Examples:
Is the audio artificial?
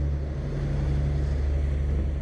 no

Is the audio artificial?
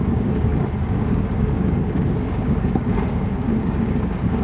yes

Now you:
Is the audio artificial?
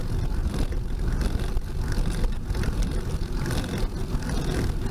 no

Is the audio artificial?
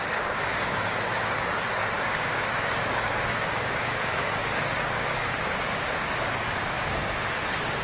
yes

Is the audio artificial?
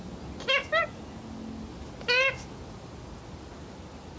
no